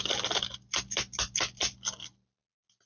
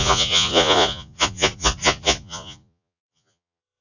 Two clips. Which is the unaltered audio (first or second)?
first